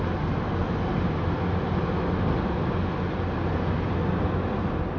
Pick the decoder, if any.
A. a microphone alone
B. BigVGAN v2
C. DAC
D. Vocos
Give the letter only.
A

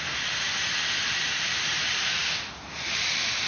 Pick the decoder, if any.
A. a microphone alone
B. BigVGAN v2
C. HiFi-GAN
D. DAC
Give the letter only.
B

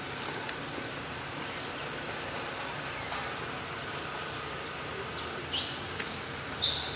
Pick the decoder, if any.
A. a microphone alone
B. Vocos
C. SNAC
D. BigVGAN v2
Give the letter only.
A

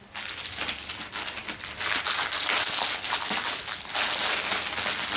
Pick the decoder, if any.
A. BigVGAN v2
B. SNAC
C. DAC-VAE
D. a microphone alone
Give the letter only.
D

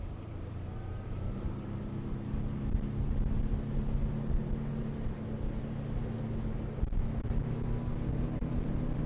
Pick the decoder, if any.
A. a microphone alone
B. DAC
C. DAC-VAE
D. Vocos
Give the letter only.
A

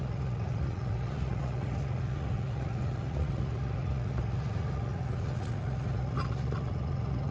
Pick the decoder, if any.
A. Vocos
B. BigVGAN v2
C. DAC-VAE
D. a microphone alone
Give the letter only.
A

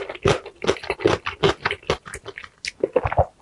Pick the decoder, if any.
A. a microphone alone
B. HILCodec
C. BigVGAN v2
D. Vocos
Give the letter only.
A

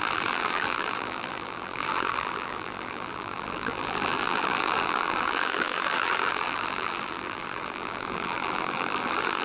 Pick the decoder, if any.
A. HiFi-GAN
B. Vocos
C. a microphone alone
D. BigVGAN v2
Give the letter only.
D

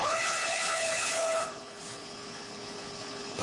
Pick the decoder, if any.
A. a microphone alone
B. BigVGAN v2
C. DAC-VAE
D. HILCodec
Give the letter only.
D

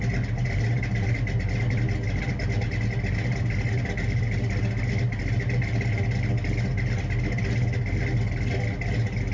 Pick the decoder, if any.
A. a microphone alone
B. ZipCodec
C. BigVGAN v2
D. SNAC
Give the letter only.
A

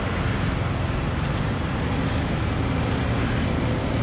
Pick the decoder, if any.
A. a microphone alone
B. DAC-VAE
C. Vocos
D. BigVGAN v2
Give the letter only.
A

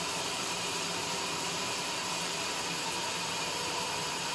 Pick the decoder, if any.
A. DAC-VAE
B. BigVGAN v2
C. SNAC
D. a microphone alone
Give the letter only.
B